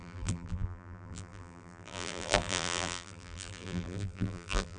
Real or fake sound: fake